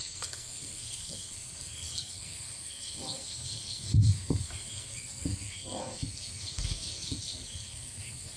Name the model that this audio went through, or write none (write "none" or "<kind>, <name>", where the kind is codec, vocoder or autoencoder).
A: codec, SNAC